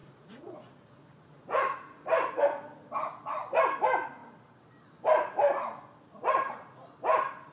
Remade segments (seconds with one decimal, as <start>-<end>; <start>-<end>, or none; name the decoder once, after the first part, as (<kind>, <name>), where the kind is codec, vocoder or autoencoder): 0.0-2.4 (vocoder, Vocos)